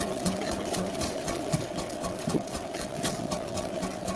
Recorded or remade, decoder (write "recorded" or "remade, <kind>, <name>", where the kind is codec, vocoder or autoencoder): remade, vocoder, WaveNeXt